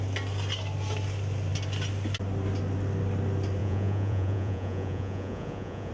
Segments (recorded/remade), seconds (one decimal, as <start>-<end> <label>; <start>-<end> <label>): 0.0-3.6 recorded; 3.6-5.9 remade